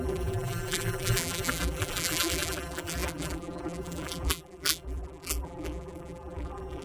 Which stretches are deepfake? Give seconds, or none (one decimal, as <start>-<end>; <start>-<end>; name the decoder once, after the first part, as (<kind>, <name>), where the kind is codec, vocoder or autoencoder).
0.0-6.8 (vocoder, BigVGAN v2)